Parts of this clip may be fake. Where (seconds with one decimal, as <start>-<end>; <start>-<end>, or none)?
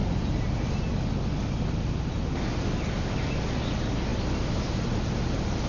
none